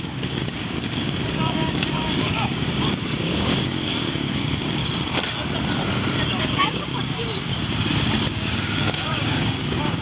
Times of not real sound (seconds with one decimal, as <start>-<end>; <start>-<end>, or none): 0.0-4.8; 6.4-7.5; 8.3-10.0